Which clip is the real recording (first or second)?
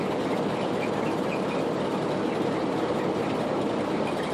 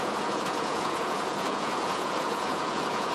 first